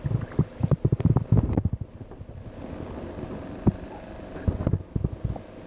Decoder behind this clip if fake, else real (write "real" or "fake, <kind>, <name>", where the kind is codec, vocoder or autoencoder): real